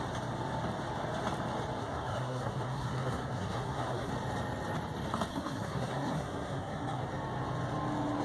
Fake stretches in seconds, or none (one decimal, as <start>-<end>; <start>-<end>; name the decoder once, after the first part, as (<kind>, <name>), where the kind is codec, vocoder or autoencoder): 1.8-4.1 (codec, SNAC); 5.3-7.0